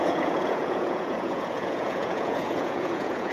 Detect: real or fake fake